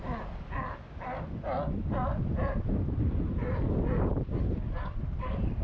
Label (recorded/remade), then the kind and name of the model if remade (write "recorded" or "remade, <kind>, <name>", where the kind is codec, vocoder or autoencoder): recorded